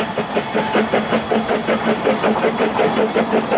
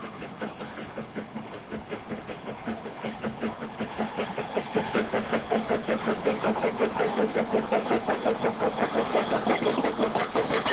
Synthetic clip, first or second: second